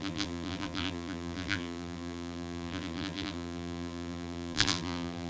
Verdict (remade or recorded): remade